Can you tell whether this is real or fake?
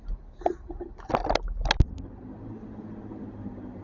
real